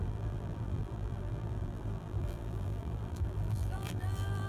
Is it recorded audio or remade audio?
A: remade